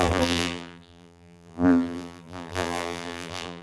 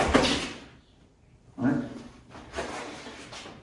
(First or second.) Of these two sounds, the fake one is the first